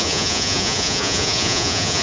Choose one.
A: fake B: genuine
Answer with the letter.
A